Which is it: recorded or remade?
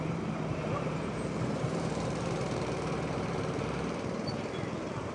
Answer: remade